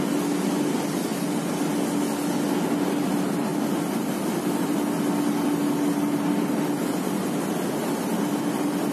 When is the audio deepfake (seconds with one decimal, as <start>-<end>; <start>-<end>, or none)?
none